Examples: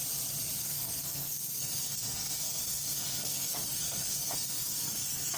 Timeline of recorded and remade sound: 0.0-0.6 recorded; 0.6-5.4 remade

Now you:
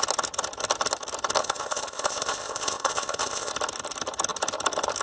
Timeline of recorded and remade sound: 0.0-1.4 recorded; 1.4-3.5 remade; 3.5-5.0 recorded